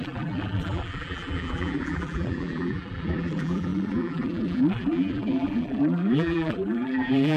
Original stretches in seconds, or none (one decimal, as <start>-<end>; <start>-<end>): none